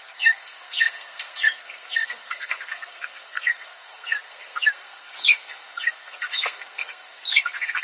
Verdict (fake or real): fake